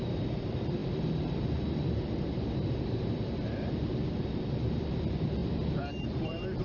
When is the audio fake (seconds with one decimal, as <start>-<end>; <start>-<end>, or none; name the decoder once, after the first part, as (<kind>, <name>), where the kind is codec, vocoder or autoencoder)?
0.0-6.6 (vocoder, BigVGAN v2)